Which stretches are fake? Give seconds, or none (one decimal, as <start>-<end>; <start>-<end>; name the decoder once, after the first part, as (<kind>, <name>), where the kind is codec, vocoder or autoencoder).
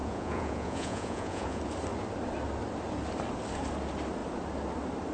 0.0-1.6 (vocoder, Vocos)